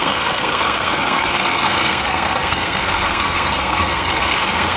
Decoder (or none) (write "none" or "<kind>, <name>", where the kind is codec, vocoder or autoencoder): codec, SNAC